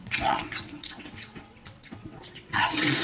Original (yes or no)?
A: no